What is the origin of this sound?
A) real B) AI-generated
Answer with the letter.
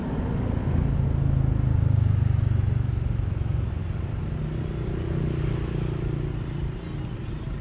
A